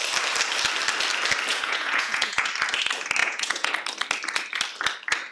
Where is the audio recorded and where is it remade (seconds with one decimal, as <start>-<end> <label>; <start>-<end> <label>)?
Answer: 0.0-1.5 recorded; 1.5-2.5 remade; 2.5-3.2 recorded; 3.2-3.7 remade; 3.7-5.3 recorded

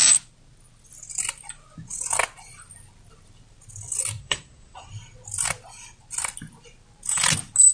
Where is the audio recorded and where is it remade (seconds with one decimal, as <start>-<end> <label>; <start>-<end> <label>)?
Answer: 0.0-4.2 recorded; 4.2-4.9 remade; 4.9-7.7 recorded

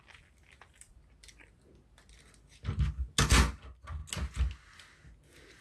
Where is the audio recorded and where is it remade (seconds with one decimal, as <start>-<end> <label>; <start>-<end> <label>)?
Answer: 0.0-5.6 recorded

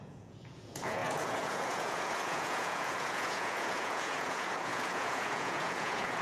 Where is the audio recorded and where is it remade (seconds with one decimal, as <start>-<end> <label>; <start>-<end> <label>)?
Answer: 0.0-6.2 remade

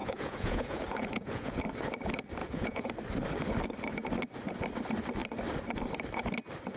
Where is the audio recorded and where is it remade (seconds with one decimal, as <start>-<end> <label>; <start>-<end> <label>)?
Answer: 0.0-1.6 remade; 1.6-2.4 recorded; 2.4-2.9 remade; 2.9-6.8 recorded

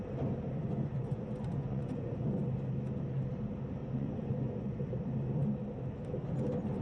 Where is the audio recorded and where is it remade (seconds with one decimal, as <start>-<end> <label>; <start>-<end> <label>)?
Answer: 0.0-0.6 recorded; 0.6-2.4 remade; 2.4-3.8 recorded; 3.8-4.9 remade; 4.9-6.8 recorded